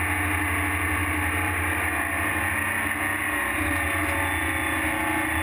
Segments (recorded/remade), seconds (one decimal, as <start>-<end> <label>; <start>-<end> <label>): 0.0-1.0 recorded; 1.0-1.9 remade; 1.9-5.4 recorded

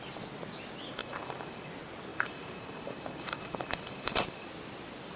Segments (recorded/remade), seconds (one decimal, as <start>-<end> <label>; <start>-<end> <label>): 0.0-1.0 recorded; 1.0-1.7 remade; 1.7-2.1 recorded; 2.1-4.5 remade; 4.5-5.2 recorded

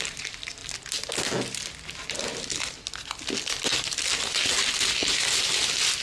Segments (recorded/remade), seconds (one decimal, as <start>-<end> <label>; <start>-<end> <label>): 0.0-6.0 recorded

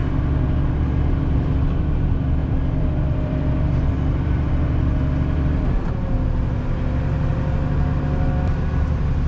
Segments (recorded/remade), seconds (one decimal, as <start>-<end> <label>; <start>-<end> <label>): 0.0-2.4 recorded; 2.4-4.5 remade; 4.5-9.3 recorded

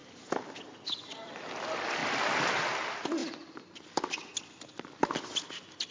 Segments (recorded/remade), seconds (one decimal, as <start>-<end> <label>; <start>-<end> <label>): 0.0-0.5 remade; 0.5-2.0 recorded; 2.0-2.6 remade; 2.6-3.2 recorded; 3.2-4.3 remade; 4.3-5.9 recorded

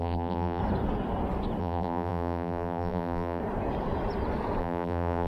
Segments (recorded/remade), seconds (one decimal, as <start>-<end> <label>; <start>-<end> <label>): 0.0-0.6 remade; 0.6-1.6 recorded; 1.6-3.4 remade; 3.4-4.6 recorded; 4.6-5.3 remade